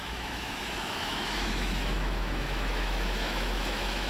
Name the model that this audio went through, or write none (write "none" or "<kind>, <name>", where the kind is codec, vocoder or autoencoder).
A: autoencoder, DAC-VAE